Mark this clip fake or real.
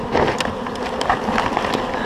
real